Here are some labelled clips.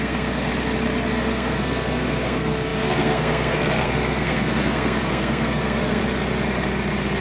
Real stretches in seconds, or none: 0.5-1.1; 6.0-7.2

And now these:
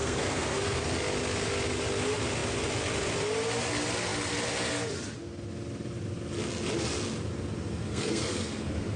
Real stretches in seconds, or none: 0.8-7.6

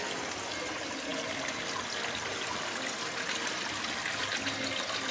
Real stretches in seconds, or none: 0.0-5.1

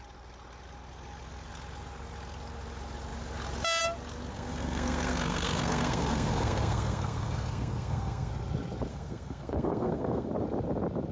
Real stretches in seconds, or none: 0.0-4.3; 8.3-8.9; 10.3-11.1

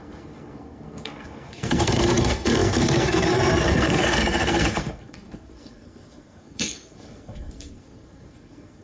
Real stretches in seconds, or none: none

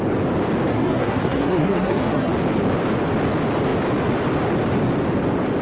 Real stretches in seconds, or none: 0.0-0.7; 2.3-5.6

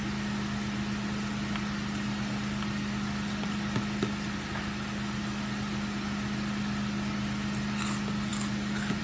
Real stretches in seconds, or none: 0.0-9.0

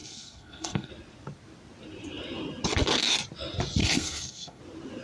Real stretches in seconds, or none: 0.9-3.8; 4.6-5.0